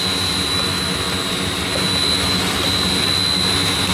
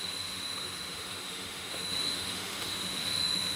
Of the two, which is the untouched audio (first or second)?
first